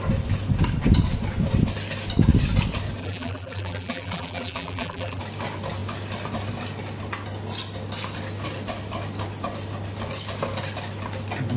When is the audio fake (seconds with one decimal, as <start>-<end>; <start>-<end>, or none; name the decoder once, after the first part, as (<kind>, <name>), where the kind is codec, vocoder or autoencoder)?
3.0-5.2 (vocoder, BigVGAN v2)